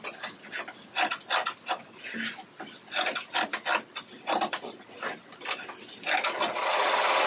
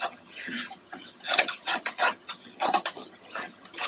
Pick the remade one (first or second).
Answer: second